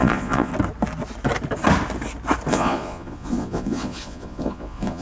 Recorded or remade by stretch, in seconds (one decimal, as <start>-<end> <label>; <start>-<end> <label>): 0.0-0.5 remade; 0.5-2.5 recorded; 2.5-5.0 remade